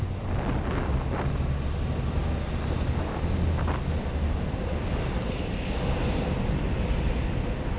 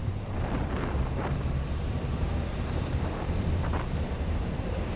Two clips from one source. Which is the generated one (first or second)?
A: second